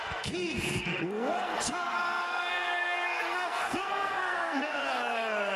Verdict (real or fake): fake